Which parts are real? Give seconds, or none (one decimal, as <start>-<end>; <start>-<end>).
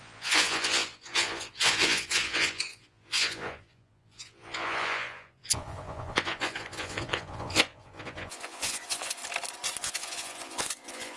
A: 9.2-9.8